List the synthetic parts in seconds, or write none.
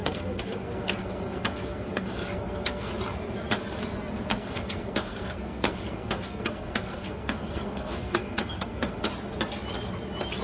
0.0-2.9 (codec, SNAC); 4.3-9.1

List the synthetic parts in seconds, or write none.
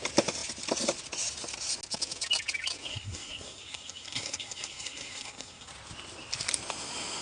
2.9-5.7 (codec, SNAC)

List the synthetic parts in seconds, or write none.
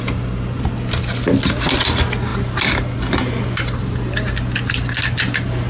none